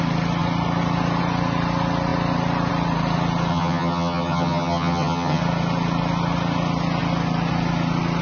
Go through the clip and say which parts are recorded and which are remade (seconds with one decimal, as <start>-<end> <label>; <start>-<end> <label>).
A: 0.0-3.5 recorded; 3.5-5.4 remade; 5.4-8.2 recorded